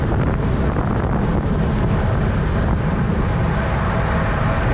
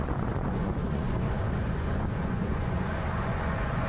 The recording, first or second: first